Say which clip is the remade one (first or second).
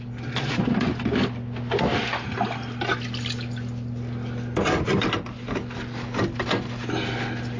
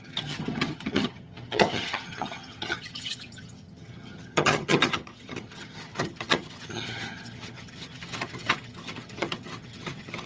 second